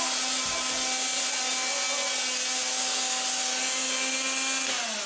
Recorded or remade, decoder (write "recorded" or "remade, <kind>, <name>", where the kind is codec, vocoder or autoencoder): recorded